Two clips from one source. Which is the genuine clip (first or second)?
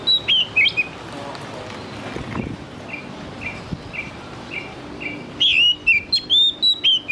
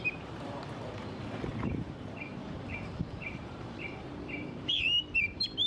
first